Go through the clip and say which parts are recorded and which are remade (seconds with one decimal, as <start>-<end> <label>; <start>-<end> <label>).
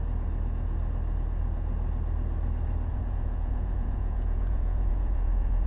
0.0-2.9 recorded; 2.9-5.7 remade